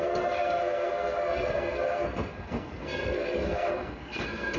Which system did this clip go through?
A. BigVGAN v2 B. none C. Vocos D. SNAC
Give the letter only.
D